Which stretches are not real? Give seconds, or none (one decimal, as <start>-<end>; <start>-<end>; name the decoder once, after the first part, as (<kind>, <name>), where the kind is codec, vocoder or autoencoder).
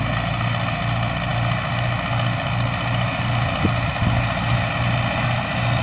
none